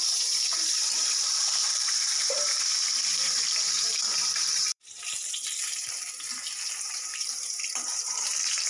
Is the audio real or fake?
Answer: fake